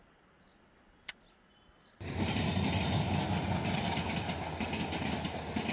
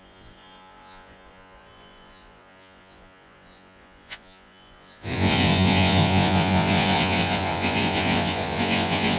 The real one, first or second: first